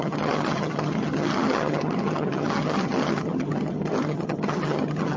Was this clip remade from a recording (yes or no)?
yes